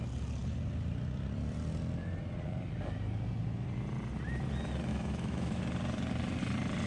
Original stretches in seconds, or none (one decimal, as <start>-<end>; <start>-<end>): 0.0-4.9; 5.6-6.9